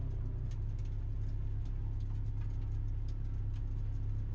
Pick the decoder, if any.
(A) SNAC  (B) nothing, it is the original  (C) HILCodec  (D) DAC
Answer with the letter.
B